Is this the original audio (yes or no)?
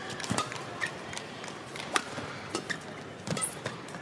no